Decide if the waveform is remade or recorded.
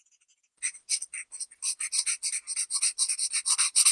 recorded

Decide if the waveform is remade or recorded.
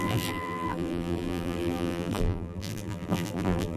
remade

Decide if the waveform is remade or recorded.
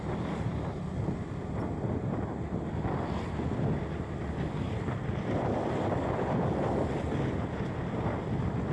recorded